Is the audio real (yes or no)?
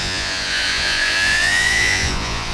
no